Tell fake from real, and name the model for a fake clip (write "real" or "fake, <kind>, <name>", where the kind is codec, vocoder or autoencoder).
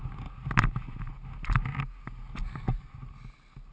real